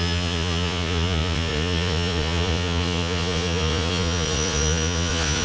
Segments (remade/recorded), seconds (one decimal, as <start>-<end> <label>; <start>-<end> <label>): 0.0-5.4 remade